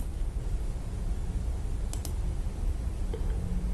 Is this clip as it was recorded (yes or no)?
yes